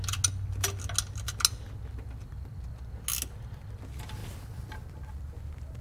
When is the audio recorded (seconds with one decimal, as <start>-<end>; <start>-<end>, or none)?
0.0-5.8